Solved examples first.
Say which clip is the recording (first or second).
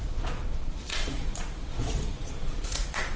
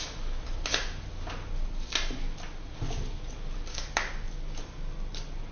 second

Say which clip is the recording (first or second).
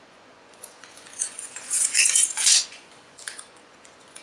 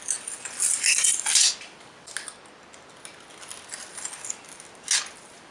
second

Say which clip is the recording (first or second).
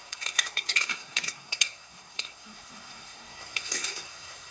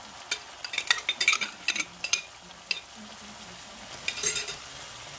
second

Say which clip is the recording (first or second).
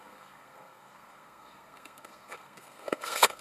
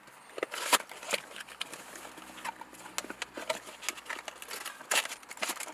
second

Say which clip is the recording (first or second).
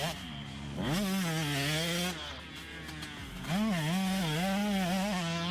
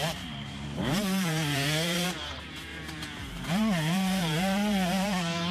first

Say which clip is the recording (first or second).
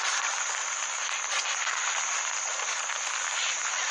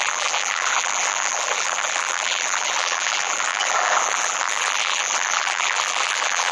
first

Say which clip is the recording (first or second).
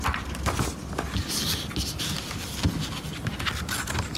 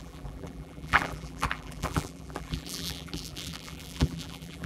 first